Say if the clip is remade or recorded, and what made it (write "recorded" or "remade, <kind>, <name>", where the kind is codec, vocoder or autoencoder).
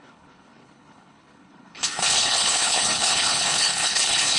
remade, codec, HILCodec